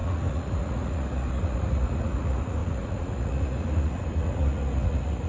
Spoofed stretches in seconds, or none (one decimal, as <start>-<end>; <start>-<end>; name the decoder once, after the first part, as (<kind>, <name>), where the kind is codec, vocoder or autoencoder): 0.0-5.3 (vocoder, Vocos)